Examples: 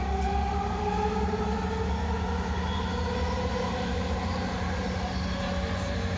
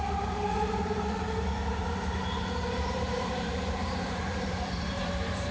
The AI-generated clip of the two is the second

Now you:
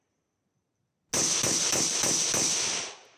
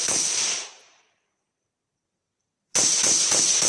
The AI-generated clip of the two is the second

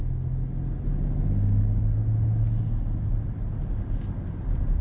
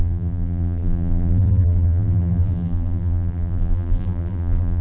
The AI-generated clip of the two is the second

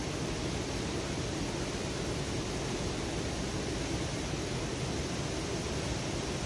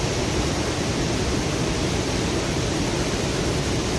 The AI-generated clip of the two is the second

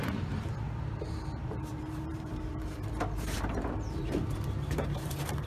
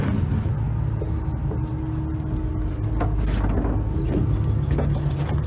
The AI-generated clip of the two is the first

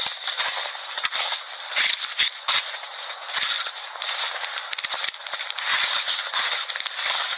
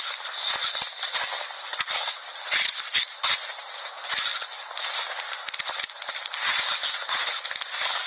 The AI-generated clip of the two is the first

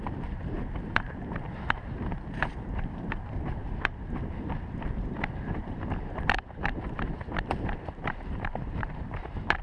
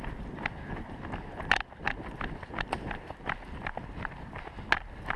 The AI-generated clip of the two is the first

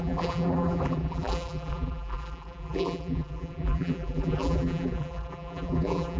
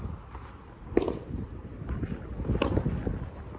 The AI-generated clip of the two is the first